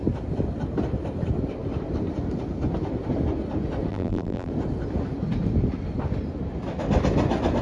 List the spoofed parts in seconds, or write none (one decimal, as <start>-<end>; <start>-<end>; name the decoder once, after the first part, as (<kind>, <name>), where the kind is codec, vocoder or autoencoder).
3.9-4.5 (vocoder, BigVGAN v2)